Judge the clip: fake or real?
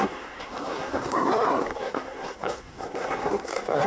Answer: fake